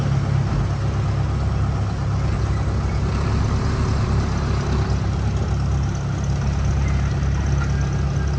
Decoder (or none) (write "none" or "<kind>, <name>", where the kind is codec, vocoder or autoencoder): none